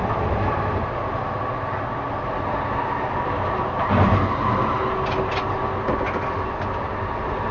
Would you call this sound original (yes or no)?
yes